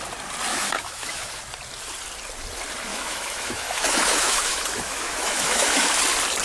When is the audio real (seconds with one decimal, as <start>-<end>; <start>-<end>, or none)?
0.0-0.5; 1.4-2.9; 6.0-6.4